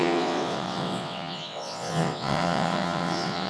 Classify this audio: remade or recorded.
remade